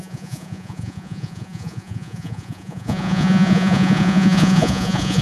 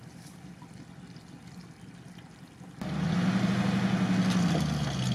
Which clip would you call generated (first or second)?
first